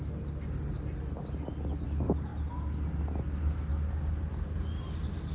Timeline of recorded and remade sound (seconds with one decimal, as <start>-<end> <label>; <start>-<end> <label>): 0.0-5.3 recorded